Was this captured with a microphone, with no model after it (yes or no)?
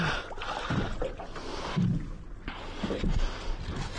yes